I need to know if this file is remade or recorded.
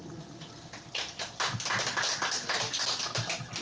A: recorded